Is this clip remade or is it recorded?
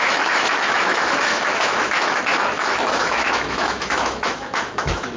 remade